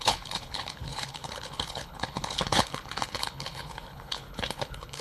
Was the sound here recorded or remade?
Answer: remade